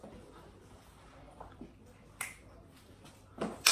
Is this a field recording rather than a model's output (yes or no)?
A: yes